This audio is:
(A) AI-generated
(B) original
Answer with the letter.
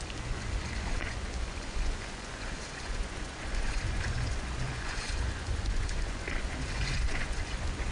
A